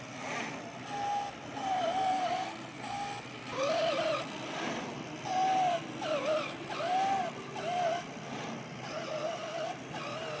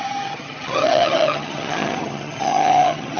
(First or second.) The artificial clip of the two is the second